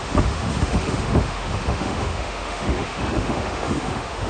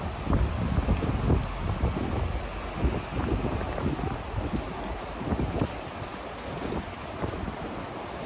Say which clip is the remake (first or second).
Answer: first